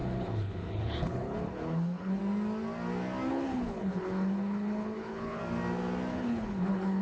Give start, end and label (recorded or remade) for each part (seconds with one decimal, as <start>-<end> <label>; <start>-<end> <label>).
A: 0.0-2.2 remade; 2.2-3.3 recorded; 3.3-5.4 remade; 5.4-6.1 recorded; 6.1-7.0 remade